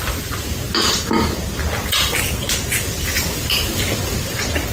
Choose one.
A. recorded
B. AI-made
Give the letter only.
A